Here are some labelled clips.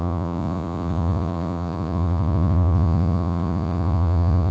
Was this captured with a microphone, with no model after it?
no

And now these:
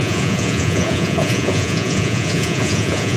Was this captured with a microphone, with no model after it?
no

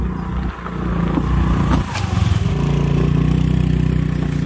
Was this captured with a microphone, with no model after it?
yes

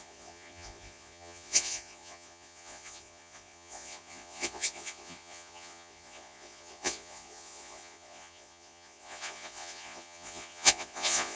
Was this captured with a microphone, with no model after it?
no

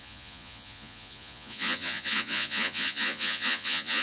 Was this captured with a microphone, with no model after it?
no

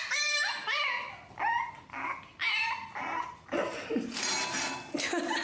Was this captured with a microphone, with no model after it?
yes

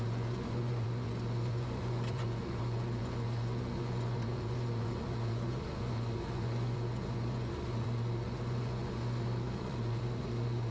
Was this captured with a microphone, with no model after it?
no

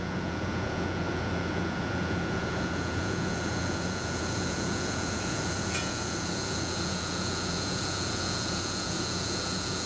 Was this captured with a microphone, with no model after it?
no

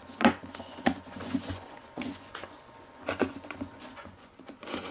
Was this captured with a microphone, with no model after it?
no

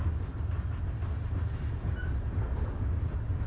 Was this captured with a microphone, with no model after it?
yes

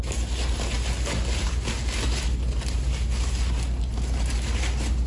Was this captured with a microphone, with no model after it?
yes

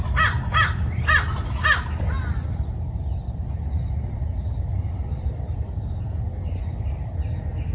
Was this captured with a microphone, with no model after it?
yes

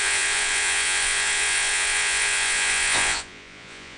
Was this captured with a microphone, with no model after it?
no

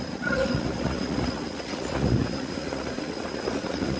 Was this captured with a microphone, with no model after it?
no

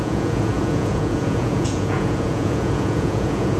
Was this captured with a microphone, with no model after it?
no